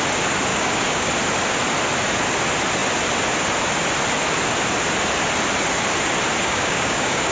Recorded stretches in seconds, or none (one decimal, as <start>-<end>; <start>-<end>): 0.0-0.5; 1.1-6.4